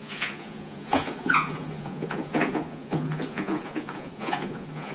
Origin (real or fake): fake